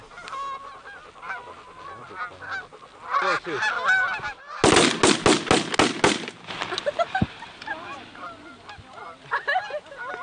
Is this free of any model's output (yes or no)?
yes